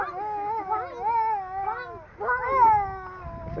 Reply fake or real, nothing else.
real